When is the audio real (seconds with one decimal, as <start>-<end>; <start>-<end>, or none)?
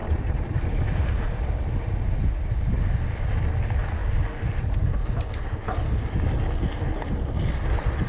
3.3-8.1